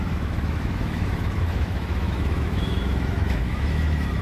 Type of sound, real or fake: fake